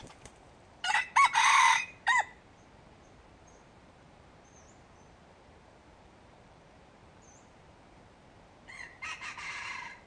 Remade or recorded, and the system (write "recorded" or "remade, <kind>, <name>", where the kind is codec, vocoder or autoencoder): remade, vocoder, BigVGAN v2